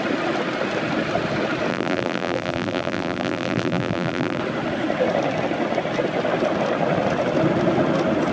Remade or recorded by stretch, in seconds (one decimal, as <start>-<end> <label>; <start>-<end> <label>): 0.0-1.7 recorded; 1.7-4.4 remade; 4.4-8.3 recorded